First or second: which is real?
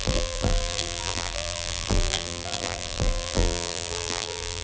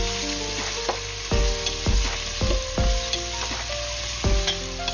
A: second